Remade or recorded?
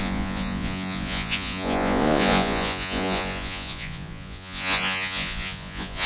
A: remade